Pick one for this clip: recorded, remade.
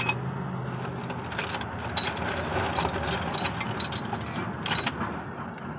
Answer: recorded